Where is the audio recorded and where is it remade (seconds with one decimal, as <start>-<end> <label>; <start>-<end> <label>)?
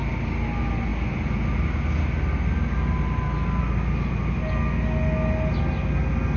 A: 0.0-6.4 recorded